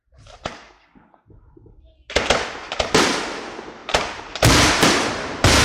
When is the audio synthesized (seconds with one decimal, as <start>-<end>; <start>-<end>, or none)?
none